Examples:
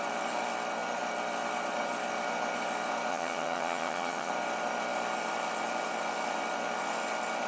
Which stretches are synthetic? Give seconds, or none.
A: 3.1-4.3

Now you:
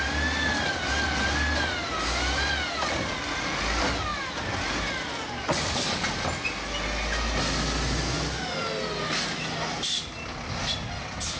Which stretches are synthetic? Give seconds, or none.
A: none